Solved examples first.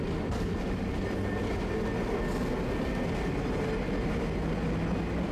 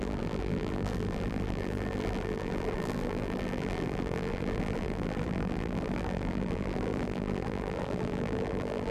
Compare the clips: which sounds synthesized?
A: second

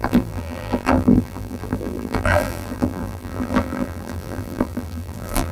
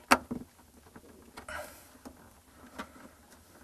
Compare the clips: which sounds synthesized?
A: first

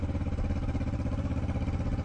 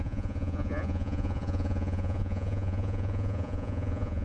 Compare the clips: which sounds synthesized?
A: second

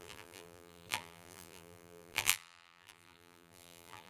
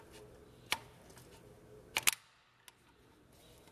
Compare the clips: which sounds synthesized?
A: first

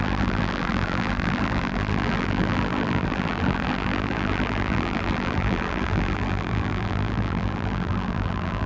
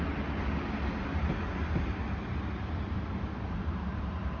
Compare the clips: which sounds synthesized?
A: first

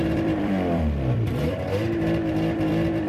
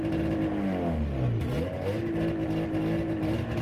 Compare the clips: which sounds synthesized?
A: first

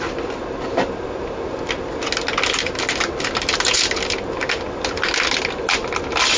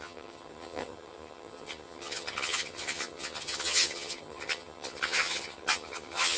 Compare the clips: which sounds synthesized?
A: second